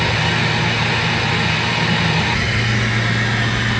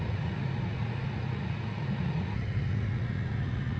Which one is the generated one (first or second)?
second